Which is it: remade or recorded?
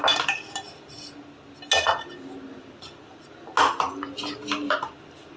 recorded